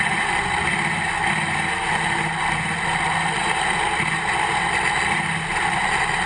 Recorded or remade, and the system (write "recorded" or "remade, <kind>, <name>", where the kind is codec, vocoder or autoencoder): recorded